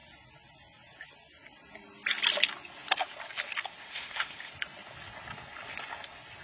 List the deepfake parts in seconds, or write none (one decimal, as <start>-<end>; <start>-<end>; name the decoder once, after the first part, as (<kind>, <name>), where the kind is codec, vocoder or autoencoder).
3.8-4.5 (autoencoder, DAC-VAE)